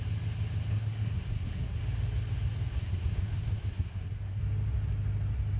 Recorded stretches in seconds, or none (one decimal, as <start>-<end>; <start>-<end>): 0.0-0.7; 1.8-2.7; 4.4-5.6